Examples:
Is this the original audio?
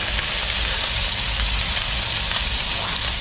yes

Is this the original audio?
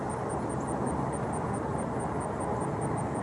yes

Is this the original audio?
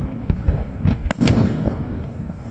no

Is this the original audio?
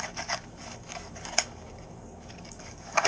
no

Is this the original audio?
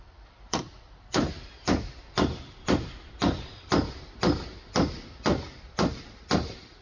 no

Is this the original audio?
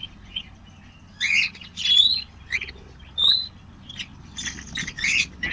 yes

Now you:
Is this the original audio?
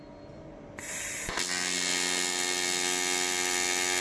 yes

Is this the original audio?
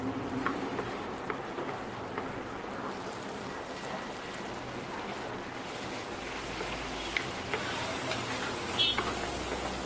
yes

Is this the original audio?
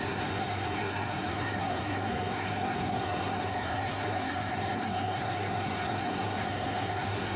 no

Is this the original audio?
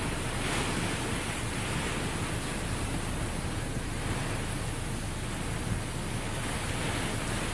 yes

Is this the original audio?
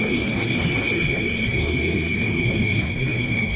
no